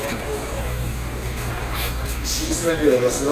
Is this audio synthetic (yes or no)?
yes